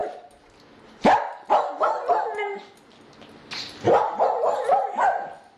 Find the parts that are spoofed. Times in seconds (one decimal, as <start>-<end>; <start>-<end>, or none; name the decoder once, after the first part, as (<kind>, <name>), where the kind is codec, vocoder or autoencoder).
none